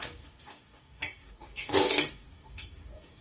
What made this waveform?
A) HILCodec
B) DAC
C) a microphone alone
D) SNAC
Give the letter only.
B